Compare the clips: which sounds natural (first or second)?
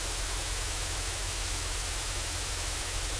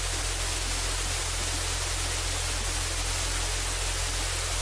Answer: second